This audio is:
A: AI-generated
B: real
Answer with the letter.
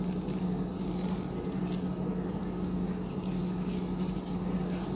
B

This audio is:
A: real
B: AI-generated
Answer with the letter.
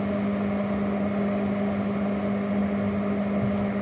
A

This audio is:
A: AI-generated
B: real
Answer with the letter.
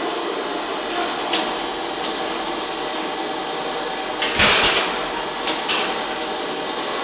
B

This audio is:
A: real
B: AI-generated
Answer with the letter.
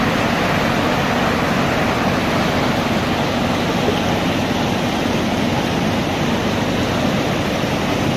A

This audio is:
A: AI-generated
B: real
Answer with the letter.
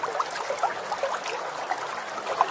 B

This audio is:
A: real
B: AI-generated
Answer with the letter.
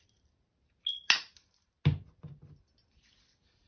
A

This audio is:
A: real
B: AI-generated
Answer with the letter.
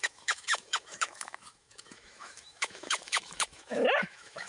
B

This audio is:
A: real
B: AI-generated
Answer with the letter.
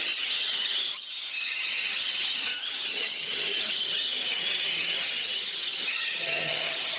B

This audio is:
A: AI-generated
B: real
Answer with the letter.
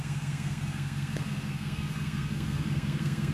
A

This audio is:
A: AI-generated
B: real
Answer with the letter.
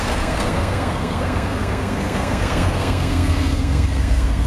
A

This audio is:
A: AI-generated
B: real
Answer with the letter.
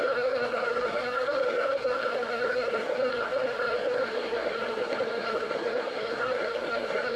A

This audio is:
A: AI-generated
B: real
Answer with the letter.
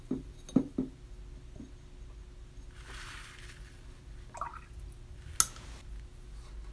B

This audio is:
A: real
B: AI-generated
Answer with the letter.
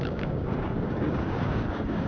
B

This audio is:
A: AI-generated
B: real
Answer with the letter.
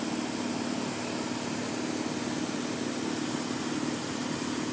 B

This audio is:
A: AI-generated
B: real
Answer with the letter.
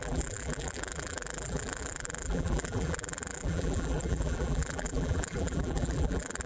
A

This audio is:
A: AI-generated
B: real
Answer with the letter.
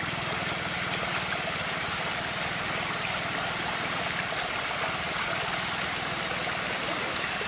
B